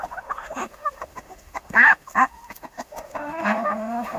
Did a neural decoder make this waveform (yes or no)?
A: yes